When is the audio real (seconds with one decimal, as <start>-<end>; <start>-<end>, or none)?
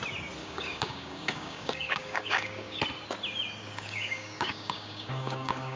0.0-0.4; 2.8-3.6